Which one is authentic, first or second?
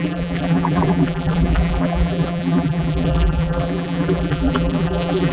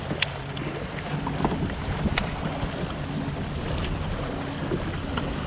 second